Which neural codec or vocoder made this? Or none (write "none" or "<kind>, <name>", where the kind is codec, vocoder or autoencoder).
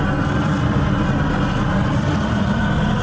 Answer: none